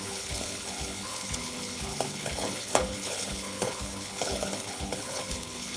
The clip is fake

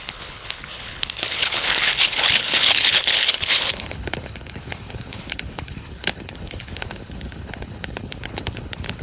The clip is fake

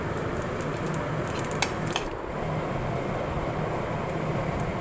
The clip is real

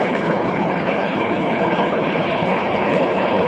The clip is fake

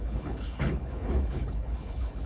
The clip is fake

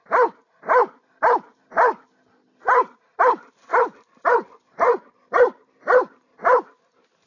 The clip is real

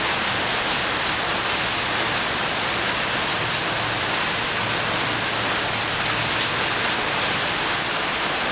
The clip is real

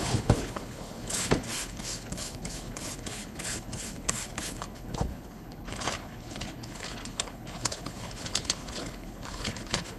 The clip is fake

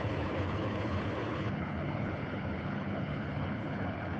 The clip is fake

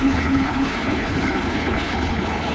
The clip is fake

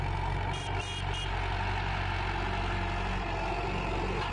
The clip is real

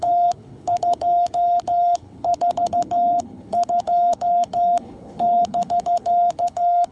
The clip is fake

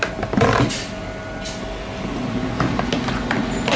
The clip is real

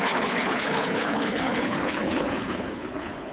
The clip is fake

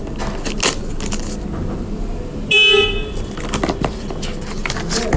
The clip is real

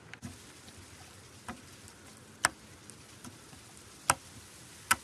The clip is real